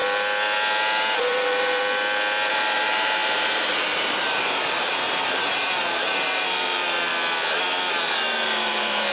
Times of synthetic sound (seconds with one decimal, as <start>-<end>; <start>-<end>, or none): 1.2-1.8; 2.5-7.1; 7.9-9.1